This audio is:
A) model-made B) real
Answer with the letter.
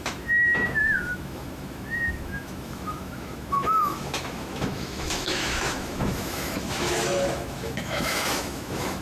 A